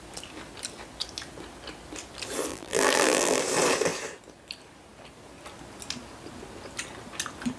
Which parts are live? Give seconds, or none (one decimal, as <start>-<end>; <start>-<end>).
0.0-2.5; 3.4-7.6